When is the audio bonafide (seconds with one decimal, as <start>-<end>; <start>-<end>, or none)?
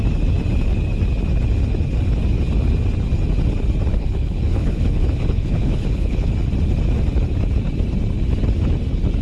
0.0-3.9; 6.3-9.2